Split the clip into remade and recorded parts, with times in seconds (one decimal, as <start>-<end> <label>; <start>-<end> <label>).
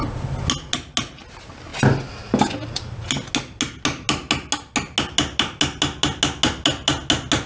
0.0-7.5 recorded